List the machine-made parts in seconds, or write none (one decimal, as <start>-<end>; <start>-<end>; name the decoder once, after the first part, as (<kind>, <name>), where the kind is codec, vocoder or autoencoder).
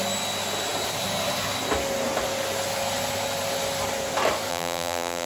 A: 4.5-5.3 (vocoder, BigVGAN v2)